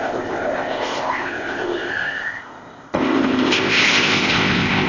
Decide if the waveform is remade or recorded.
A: remade